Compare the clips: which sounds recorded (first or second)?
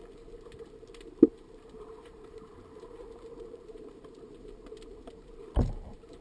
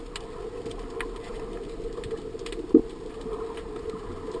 second